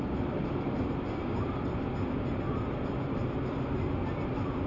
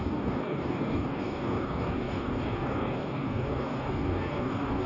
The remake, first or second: second